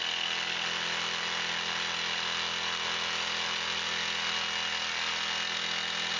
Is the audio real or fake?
real